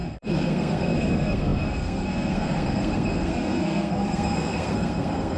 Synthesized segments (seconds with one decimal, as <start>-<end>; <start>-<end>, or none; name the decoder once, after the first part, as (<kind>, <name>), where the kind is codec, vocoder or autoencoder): 0.0-5.4 (codec, SNAC)